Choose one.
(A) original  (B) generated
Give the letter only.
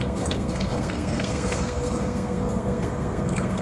B